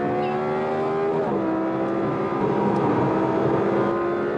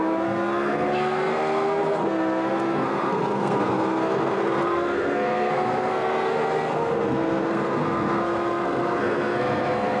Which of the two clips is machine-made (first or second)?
second